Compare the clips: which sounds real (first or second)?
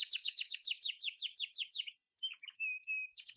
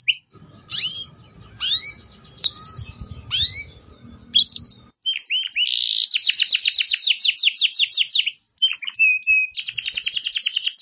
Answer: second